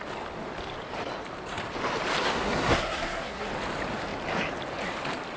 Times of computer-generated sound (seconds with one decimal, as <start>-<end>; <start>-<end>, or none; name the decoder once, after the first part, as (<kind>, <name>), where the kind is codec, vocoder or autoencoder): 2.2-3.5 (codec, SNAC)